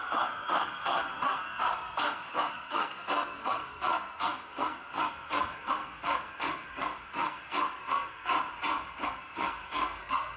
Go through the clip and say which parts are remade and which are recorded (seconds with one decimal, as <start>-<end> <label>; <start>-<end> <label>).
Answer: 0.0-8.3 remade; 8.3-9.0 recorded; 9.0-10.4 remade